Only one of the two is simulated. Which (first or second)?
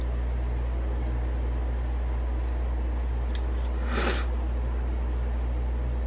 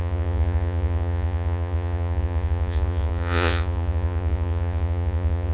second